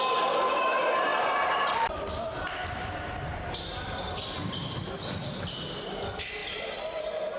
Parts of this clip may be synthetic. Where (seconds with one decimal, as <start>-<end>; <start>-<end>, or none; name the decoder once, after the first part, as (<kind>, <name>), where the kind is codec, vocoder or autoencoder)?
1.1-5.5 (vocoder, BigVGAN v2); 6.4-7.4

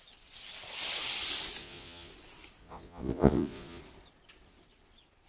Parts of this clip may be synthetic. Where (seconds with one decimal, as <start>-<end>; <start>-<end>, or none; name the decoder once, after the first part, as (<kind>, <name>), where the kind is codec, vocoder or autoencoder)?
1.6-2.1 (vocoder, Vocos); 2.6-3.8

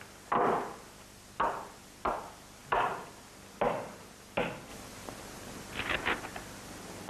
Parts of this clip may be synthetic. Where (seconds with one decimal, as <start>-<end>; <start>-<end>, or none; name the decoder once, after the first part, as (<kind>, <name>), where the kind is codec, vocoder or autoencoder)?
none

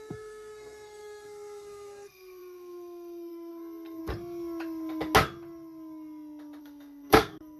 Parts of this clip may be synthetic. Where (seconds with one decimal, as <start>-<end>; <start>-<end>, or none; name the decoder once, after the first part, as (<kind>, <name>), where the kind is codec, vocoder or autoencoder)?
0.0-4.0 (codec, SNAC); 6.6-7.6

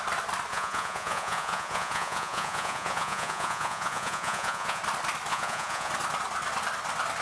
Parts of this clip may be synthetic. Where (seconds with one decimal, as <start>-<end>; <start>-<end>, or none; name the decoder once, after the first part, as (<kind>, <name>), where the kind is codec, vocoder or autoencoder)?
0.5-4.8 (vocoder, Vocos); 5.3-5.9

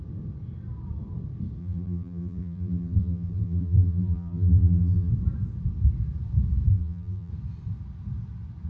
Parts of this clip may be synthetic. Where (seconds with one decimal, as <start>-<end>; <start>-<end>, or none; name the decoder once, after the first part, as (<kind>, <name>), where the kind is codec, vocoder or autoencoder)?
1.6-5.1 (vocoder, BigVGAN v2); 6.7-7.3

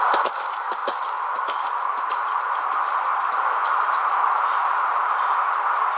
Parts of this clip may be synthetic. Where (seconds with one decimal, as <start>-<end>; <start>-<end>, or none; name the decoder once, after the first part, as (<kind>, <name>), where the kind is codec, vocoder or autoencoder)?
none